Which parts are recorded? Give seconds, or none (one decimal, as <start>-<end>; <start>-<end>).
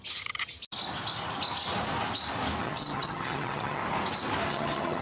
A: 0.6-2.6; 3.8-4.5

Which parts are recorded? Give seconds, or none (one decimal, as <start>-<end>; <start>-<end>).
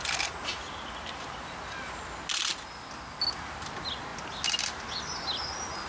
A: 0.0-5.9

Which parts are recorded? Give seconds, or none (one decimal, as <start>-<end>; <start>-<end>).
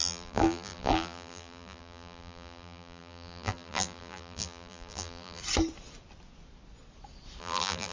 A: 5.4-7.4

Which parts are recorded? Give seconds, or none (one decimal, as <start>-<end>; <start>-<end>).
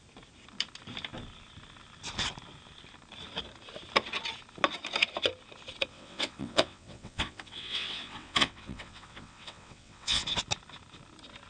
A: 0.0-5.9; 10.2-11.5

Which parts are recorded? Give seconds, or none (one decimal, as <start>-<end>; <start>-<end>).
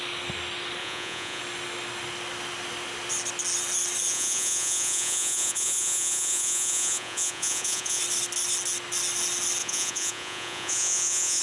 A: 0.0-0.8; 1.4-4.1; 8.0-9.6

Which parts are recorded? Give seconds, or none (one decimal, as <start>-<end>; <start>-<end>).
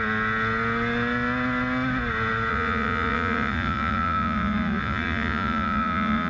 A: 0.0-2.5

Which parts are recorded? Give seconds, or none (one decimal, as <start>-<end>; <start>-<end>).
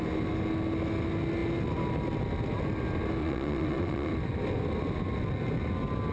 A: 0.0-3.2; 4.1-6.1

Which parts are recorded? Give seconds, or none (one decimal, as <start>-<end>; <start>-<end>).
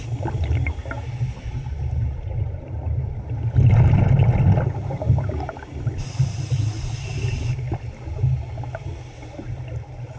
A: 0.0-10.2